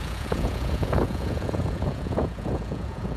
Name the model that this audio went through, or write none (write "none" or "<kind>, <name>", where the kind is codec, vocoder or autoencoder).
vocoder, Vocos